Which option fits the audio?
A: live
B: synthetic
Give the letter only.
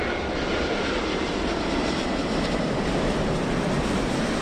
A